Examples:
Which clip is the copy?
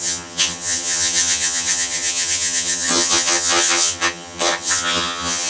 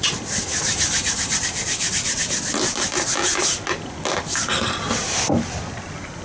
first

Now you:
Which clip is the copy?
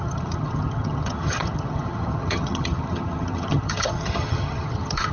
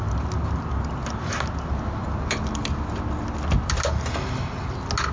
first